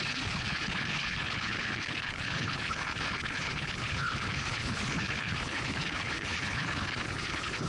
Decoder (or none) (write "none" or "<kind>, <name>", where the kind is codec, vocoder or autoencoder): codec, HILCodec